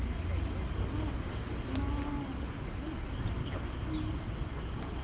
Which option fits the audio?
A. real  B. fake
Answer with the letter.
A